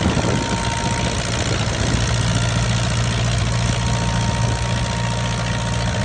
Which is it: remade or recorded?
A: recorded